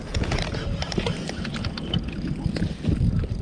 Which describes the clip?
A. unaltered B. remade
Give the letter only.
A